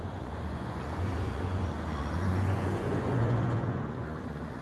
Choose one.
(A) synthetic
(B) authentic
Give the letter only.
A